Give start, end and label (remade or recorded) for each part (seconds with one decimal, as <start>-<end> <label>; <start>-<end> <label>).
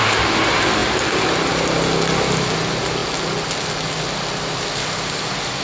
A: 0.0-5.6 recorded